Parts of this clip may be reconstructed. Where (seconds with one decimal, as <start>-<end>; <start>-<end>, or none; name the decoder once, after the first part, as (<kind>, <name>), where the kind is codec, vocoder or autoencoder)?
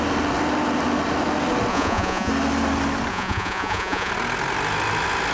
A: 1.7-2.3 (vocoder, Vocos); 3.1-4.1